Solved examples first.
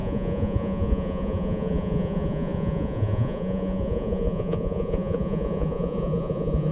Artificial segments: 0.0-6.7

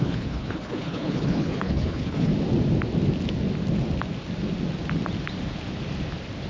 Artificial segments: 0.0-2.3

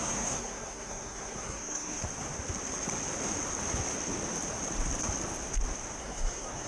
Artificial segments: 0.0-2.0; 6.0-6.7

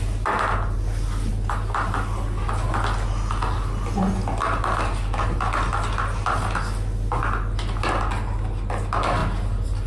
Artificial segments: none

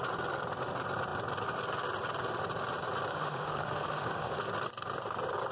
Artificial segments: 3.1-4.4

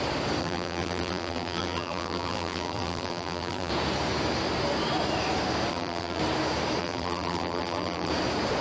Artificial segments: 0.4-3.7; 5.7-6.2; 6.8-8.1

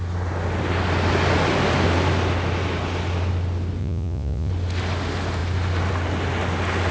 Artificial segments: 3.8-4.5

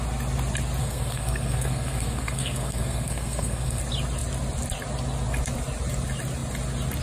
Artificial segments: 0.8-3.8